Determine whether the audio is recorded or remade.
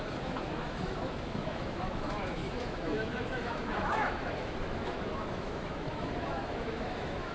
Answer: remade